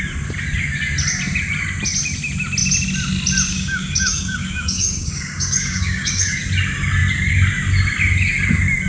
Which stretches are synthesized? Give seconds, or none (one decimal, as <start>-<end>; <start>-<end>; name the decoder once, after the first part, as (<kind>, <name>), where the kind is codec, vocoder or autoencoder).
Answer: 3.5-6.4 (codec, DAC)